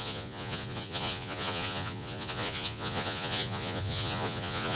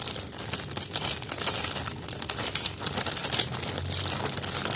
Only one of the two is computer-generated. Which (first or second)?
first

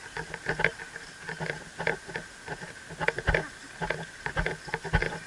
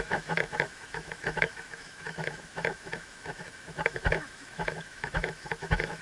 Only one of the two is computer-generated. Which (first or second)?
second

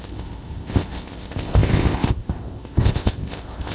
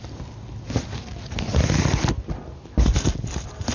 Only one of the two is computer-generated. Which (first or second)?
first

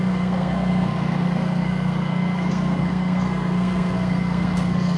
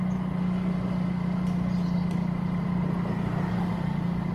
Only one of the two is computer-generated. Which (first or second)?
first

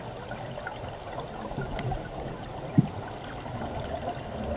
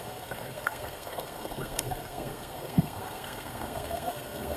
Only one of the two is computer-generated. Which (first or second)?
second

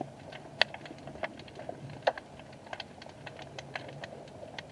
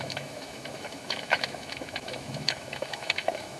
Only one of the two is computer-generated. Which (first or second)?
second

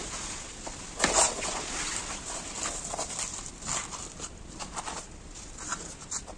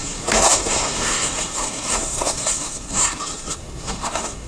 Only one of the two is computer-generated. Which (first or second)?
second